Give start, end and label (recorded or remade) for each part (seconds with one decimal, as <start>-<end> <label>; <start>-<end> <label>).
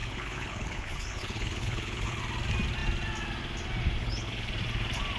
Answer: 0.0-2.2 remade; 2.2-4.0 recorded; 4.0-4.5 remade; 4.5-5.2 recorded